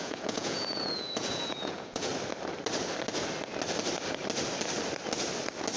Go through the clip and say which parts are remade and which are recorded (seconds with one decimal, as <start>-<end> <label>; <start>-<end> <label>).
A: 0.0-2.1 remade; 2.1-5.8 recorded